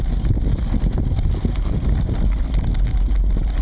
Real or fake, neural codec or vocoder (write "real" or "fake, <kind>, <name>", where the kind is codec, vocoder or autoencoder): real